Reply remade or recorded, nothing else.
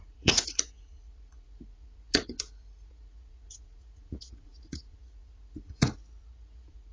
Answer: remade